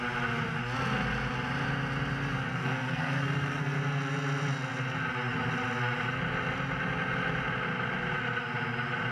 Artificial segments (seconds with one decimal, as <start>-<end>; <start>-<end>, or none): 2.5-3.6